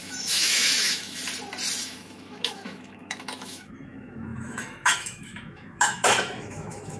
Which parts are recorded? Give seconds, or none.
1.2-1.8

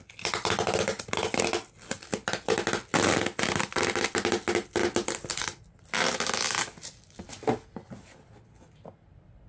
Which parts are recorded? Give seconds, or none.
0.0-9.5

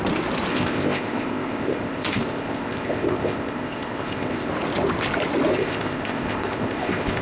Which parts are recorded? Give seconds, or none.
0.0-0.5; 4.5-5.5

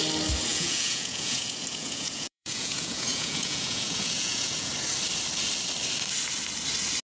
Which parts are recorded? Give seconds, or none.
0.0-0.5; 4.7-7.0

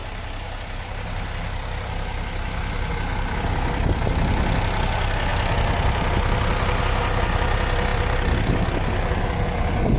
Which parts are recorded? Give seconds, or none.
0.0-10.0